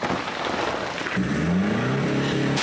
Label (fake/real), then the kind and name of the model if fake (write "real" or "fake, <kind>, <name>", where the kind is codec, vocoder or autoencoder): real